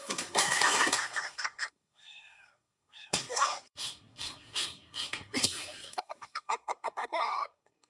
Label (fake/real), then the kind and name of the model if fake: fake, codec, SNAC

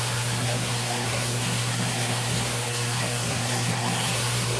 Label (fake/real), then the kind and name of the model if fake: fake, codec, SNAC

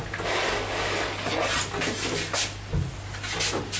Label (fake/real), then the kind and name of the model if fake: real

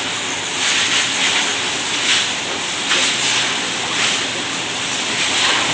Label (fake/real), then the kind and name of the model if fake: real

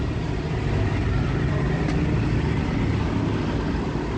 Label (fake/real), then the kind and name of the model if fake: real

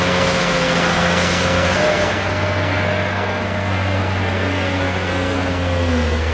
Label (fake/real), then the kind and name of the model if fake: fake, codec, SNAC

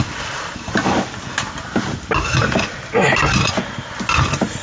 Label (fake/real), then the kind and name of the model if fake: real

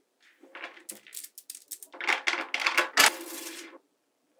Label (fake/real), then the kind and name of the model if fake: real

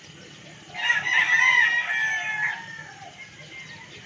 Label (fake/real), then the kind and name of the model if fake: real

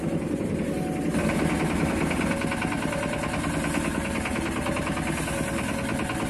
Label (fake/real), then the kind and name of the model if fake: real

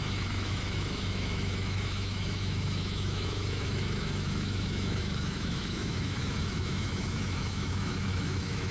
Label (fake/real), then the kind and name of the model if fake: fake, autoencoder, DAC-VAE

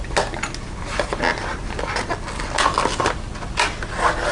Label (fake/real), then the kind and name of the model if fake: real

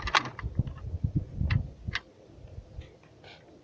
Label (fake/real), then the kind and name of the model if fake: real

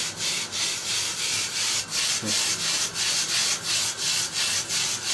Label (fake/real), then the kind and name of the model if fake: real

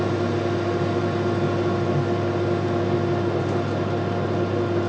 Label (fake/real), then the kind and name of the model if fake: real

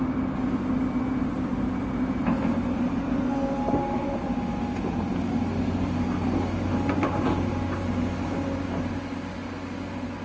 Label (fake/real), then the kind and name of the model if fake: real